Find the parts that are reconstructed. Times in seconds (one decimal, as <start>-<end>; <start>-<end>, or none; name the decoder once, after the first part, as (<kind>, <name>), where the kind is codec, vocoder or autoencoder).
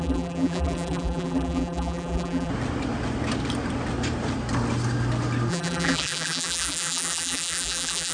0.0-2.5 (vocoder, BigVGAN v2); 5.5-8.1